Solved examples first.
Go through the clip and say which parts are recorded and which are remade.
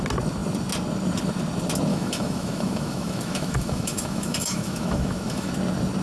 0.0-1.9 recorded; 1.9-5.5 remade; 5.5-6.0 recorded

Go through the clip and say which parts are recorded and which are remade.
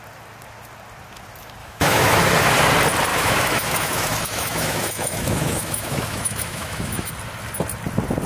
0.0-1.6 recorded; 1.6-2.2 remade; 2.2-3.1 recorded; 3.1-7.1 remade; 7.1-8.3 recorded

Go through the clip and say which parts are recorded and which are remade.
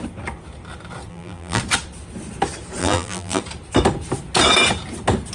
0.0-1.1 recorded; 1.1-1.6 remade; 1.6-2.8 recorded; 2.8-3.4 remade; 3.4-5.3 recorded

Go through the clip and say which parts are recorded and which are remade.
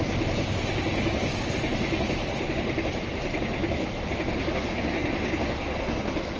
0.0-6.4 recorded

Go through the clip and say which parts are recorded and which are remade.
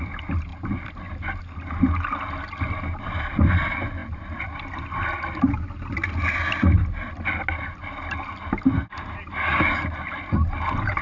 0.0-11.0 recorded